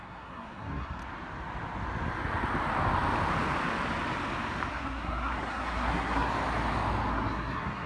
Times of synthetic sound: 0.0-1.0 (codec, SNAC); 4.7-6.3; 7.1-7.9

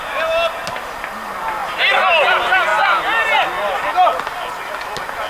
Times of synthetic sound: none